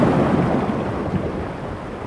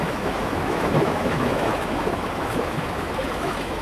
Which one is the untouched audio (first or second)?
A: first